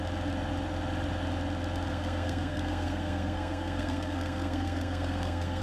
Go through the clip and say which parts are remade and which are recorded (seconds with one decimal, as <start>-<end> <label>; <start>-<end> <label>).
0.0-1.9 recorded; 1.9-5.6 remade